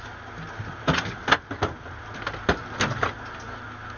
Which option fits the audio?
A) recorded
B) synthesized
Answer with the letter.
A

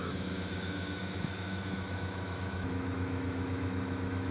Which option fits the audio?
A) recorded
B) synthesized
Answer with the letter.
B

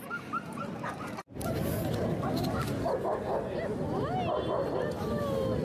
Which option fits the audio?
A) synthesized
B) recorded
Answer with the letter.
B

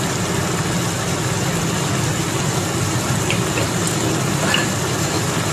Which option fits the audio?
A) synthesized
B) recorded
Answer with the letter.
B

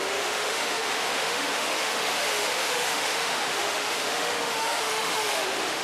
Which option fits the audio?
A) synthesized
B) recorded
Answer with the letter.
A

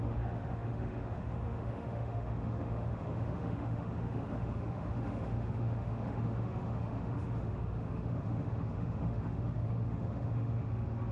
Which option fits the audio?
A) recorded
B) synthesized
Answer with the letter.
B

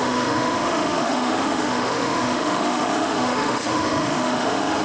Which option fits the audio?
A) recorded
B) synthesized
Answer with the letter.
B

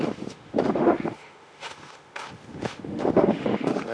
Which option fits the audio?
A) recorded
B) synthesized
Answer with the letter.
B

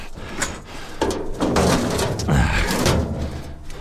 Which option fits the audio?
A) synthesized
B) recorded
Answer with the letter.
B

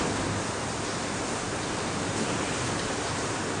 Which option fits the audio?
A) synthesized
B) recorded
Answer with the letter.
B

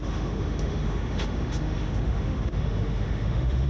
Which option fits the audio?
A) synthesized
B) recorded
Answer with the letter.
A